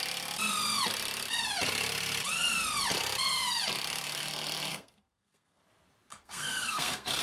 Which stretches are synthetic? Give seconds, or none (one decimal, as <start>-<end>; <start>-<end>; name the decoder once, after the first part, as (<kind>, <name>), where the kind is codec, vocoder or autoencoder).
4.7-5.6 (codec, SNAC); 6.1-7.2